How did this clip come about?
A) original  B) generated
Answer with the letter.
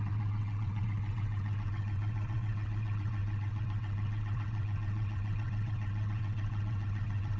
B